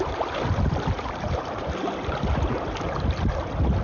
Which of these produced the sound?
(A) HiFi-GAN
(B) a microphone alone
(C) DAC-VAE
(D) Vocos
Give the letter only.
B